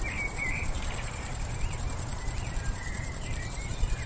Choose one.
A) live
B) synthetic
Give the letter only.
B